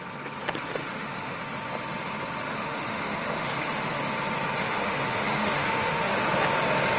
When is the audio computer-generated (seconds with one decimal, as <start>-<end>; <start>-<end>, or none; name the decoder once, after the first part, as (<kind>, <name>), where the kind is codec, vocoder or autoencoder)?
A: 0.7-1.4 (autoencoder, DAC-VAE); 2.5-4.0; 4.6-6.4